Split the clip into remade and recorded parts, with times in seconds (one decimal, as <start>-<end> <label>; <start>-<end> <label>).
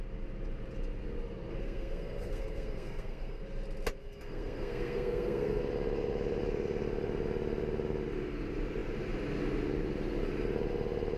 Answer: 0.0-1.6 recorded; 1.6-3.4 remade; 3.4-4.0 recorded; 4.0-5.6 remade; 5.6-11.2 recorded